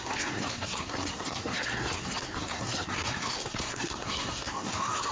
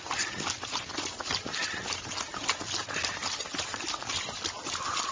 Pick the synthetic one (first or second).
first